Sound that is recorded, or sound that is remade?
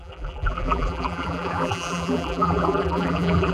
remade